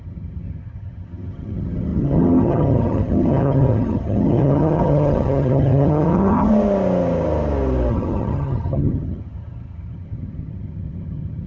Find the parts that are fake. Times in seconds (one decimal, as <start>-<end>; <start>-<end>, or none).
0.0-6.5; 7.9-11.5